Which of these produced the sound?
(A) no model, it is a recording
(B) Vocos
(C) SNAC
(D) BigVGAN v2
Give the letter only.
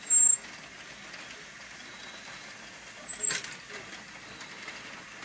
A